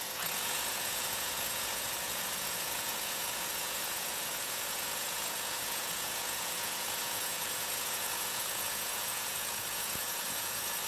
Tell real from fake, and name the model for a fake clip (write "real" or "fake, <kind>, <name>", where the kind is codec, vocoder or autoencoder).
fake, vocoder, Vocos